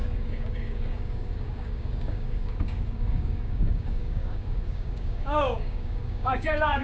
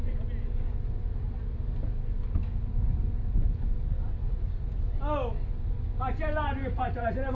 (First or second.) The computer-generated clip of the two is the first